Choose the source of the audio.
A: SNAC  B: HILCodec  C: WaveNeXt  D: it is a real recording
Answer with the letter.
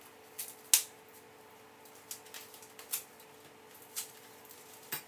D